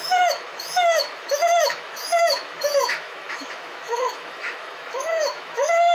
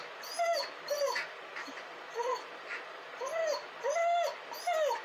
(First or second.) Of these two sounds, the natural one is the second